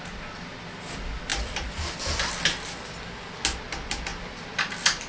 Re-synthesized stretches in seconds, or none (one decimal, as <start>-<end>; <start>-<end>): 1.3-2.3